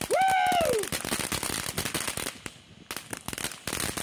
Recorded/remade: recorded